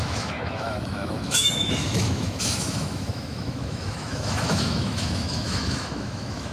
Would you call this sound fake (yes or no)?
yes